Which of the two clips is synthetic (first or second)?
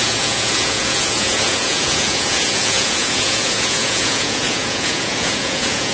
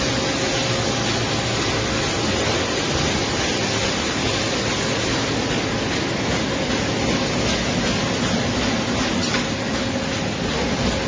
first